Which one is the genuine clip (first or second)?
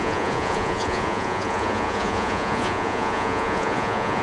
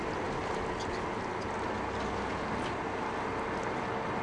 second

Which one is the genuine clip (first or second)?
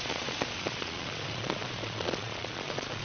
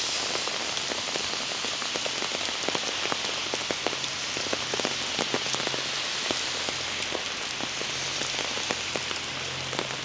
second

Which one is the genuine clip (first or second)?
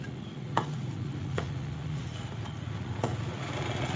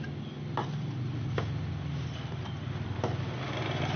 second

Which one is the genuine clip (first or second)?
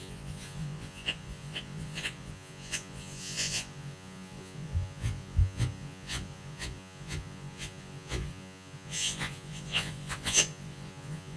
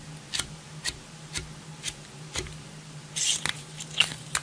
second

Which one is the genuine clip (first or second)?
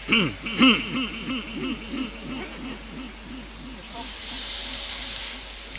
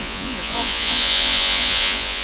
first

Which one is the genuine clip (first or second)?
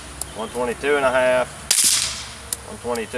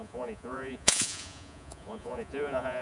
first